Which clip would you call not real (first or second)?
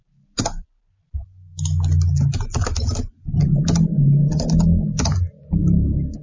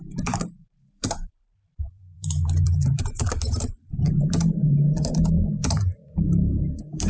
second